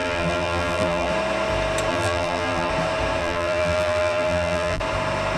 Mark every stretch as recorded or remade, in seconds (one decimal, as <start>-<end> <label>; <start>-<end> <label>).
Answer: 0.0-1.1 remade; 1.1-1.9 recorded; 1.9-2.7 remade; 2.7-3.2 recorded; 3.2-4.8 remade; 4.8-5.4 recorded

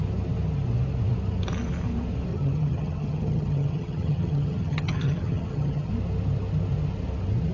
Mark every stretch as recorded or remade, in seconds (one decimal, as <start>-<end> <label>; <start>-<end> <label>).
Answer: 0.0-2.3 recorded; 2.3-5.9 remade; 5.9-7.5 recorded

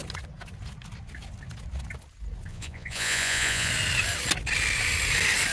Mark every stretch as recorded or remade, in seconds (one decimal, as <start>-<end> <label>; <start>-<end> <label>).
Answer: 0.0-2.5 recorded; 2.5-3.7 remade; 3.7-5.5 recorded

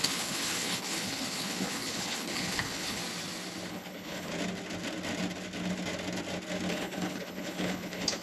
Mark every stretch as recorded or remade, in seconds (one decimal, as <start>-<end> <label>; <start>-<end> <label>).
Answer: 0.0-3.0 remade; 3.0-3.7 recorded; 3.7-4.3 remade; 4.3-6.7 recorded; 6.7-8.2 remade

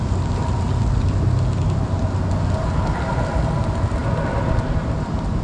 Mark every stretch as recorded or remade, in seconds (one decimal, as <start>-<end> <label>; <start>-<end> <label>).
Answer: 0.0-5.4 recorded